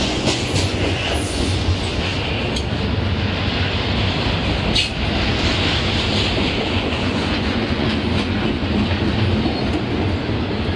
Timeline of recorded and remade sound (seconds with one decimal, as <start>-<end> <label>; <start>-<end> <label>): 0.0-1.9 remade; 1.9-6.4 recorded; 6.4-8.6 remade; 8.6-10.8 recorded